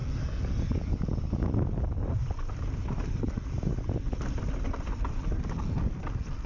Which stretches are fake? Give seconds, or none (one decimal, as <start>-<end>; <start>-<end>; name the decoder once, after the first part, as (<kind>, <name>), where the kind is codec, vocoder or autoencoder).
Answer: none